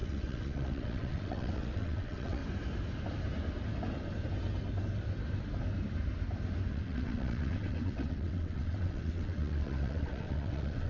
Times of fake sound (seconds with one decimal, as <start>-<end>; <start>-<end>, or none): 0.0-2.4; 6.7-10.9